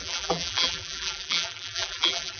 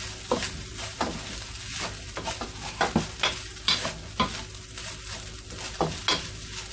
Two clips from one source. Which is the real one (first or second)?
second